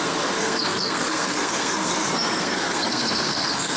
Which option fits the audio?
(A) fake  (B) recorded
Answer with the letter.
A